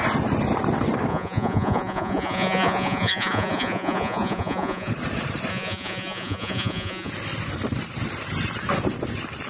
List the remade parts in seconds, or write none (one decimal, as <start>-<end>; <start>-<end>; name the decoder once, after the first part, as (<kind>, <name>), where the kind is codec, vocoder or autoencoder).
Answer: 1.1-4.9 (vocoder, Vocos); 5.5-7.1